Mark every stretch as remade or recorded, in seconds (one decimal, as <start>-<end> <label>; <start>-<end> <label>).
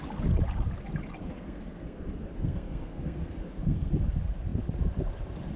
0.0-1.2 recorded; 1.2-3.9 remade; 3.9-5.6 recorded